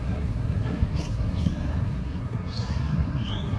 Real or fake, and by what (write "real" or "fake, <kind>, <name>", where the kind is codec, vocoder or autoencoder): fake, codec, SNAC